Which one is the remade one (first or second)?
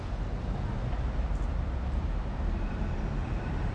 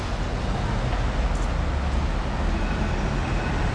first